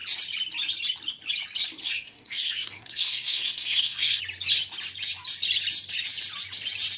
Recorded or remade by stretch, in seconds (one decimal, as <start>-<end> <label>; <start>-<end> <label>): 0.0-1.8 recorded; 1.8-4.2 remade; 4.2-7.0 recorded